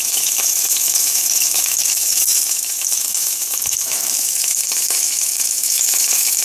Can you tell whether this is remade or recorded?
remade